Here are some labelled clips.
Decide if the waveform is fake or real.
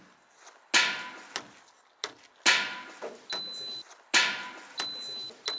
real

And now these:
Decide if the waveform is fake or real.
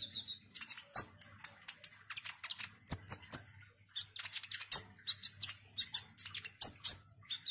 real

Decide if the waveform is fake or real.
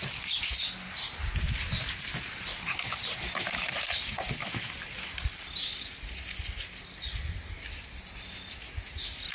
real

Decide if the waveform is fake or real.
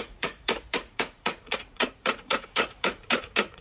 fake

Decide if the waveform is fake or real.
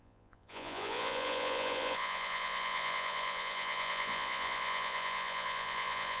fake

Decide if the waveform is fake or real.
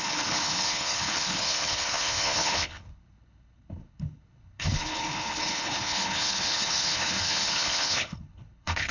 fake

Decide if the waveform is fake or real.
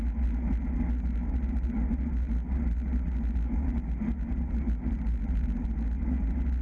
real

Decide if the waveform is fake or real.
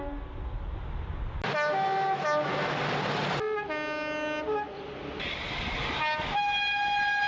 real